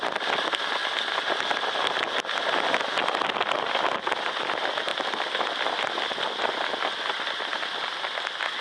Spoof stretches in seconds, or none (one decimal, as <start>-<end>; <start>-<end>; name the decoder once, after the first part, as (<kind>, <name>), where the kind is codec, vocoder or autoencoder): none